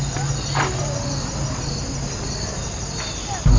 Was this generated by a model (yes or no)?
no